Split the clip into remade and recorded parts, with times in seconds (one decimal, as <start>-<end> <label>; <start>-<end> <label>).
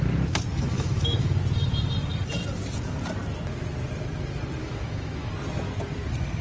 0.0-0.5 recorded; 0.5-1.4 remade; 1.4-4.6 recorded; 4.6-5.3 remade; 5.3-6.4 recorded